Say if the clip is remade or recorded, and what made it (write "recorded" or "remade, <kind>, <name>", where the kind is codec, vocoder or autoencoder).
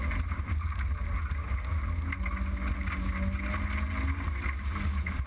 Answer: recorded